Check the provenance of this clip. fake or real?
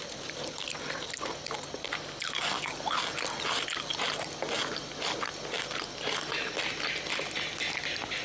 real